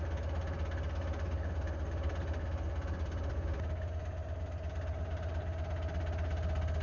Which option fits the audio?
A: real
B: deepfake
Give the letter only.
A